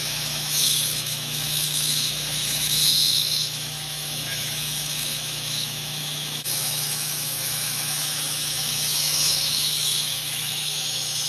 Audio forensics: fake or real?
fake